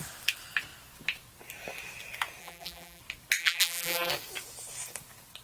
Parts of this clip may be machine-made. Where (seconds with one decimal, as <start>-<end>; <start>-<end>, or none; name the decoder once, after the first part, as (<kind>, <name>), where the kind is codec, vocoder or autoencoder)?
2.4-3.0 (vocoder, BigVGAN v2); 3.4-4.1

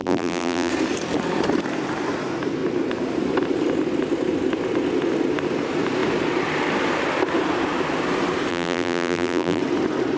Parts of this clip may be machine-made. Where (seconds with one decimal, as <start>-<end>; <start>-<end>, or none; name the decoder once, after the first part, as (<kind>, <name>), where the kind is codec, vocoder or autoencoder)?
0.0-0.7 (vocoder, BigVGAN v2); 8.5-9.6